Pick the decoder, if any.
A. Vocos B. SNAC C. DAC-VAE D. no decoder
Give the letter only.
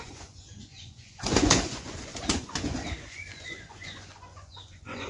A